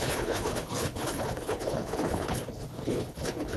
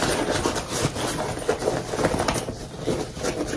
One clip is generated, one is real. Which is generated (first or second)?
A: first